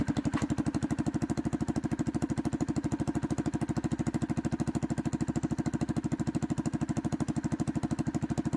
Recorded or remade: recorded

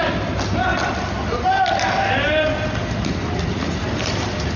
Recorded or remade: recorded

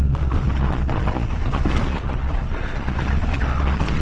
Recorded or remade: remade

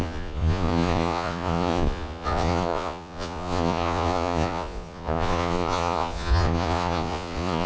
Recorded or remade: remade